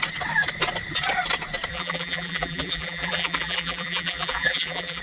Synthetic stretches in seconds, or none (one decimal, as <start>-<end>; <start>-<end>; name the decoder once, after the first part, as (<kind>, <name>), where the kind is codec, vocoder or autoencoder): 1.7-5.0 (vocoder, BigVGAN v2)